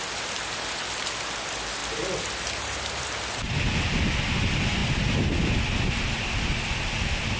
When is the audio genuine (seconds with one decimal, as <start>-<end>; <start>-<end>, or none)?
0.0-7.4